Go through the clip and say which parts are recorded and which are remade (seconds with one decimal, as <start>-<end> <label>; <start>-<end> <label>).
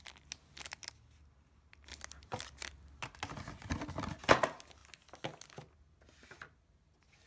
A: 0.0-7.3 recorded